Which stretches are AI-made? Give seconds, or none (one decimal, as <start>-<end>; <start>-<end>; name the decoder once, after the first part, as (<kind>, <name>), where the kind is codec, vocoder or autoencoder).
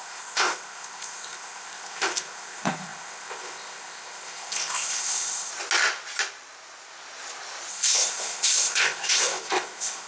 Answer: 0.0-5.5 (codec, ZipCodec); 7.7-10.1